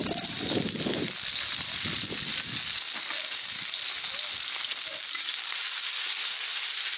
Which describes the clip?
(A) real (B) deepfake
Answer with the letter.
A